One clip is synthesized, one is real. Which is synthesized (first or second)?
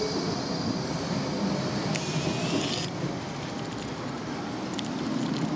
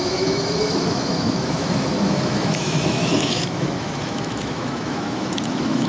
second